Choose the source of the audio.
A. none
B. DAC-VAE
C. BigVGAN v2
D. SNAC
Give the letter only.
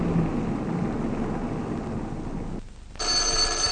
A